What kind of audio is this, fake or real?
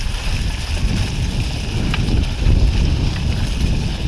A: real